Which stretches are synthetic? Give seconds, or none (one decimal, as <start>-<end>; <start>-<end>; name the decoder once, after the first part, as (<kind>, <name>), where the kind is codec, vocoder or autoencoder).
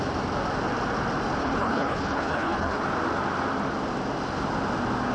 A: 1.4-2.8 (codec, HILCodec)